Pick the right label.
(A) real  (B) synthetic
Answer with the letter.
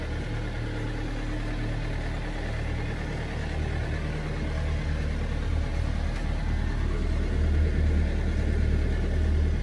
A